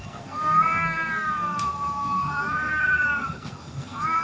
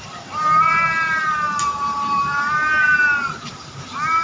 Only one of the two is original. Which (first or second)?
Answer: second